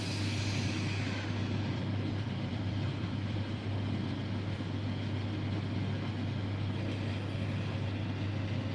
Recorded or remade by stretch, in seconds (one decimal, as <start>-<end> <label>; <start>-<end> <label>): 0.0-1.4 recorded; 1.4-3.6 remade; 3.6-8.7 recorded